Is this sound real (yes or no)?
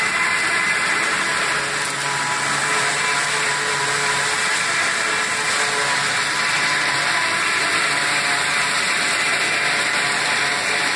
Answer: yes